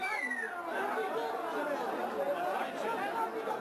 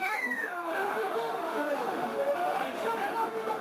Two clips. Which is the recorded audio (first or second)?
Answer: first